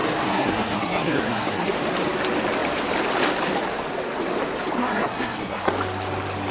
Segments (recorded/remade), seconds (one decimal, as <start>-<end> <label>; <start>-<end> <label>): 0.0-1.7 remade; 1.7-4.8 recorded; 4.8-5.7 remade; 5.7-6.5 recorded